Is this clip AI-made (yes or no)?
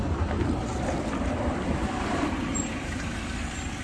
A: no